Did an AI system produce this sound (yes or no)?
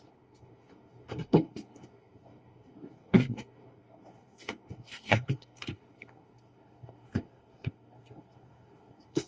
yes